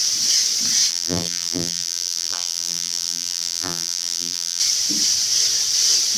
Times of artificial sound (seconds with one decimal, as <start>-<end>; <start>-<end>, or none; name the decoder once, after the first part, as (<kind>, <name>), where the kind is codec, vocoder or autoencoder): 0.9-4.6 (vocoder, BigVGAN v2)